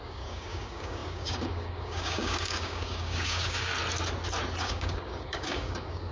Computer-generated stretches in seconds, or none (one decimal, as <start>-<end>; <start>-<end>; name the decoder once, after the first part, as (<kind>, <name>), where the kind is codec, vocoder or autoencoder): 0.0-3.7 (codec, DAC); 4.6-6.1